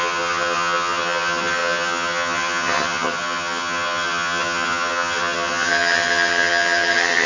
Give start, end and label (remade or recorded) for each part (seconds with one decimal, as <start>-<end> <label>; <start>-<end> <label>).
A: 0.0-7.3 remade